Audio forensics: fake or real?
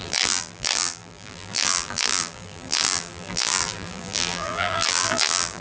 fake